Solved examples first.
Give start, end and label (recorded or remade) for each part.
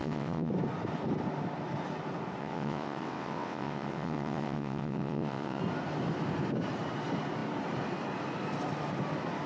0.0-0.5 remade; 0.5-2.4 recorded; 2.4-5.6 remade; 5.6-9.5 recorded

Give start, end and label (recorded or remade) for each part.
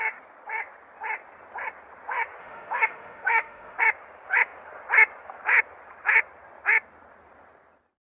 0.0-2.4 recorded; 2.4-3.8 remade; 3.8-8.0 recorded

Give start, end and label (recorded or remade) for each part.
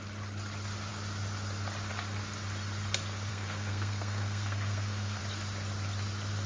0.0-3.3 recorded; 3.3-5.2 remade; 5.2-6.5 recorded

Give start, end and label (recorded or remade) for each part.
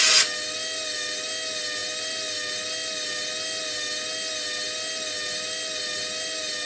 0.0-6.7 recorded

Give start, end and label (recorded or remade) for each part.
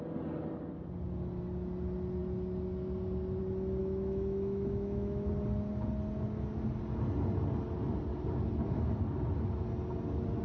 0.0-3.8 recorded; 3.8-5.3 remade; 5.3-10.4 recorded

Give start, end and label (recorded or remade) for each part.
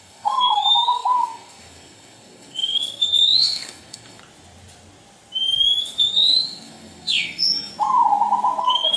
0.0-4.2 remade; 4.2-5.8 recorded; 5.8-7.7 remade; 7.7-8.6 recorded; 8.6-9.0 remade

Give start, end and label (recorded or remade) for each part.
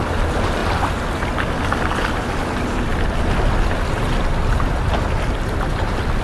0.0-6.2 recorded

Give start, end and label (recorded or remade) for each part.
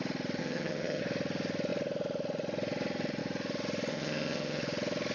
0.0-0.4 recorded; 0.4-1.0 remade; 1.0-3.9 recorded; 3.9-4.6 remade; 4.6-5.1 recorded